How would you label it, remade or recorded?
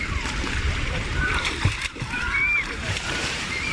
remade